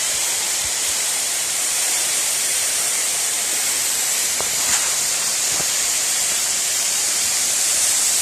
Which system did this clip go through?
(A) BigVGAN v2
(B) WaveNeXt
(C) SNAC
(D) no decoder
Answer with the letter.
A